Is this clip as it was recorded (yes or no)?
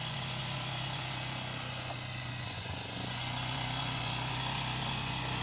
no